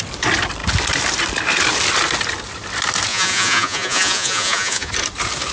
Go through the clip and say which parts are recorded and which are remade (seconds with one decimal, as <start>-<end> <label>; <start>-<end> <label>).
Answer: 0.0-3.1 recorded; 3.1-4.9 remade; 4.9-5.5 recorded